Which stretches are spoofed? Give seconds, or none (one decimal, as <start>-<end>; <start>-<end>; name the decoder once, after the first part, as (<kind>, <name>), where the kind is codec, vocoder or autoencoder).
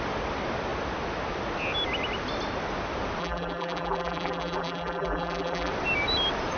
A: 3.2-5.7 (vocoder, BigVGAN v2)